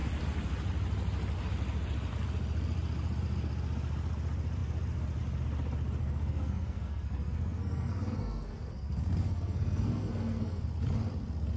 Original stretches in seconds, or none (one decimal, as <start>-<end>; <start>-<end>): 0.0-6.0; 10.6-11.6